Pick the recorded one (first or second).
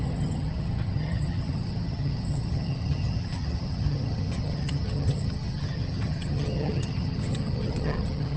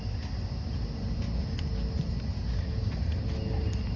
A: second